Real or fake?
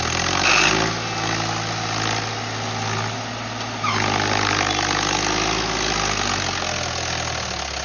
real